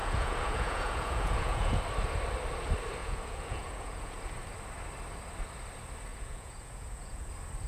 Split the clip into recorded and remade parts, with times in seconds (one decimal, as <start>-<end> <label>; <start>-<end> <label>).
0.0-1.8 remade; 1.8-3.0 recorded; 3.0-4.2 remade; 4.2-6.1 recorded; 6.1-7.3 remade; 7.3-7.7 recorded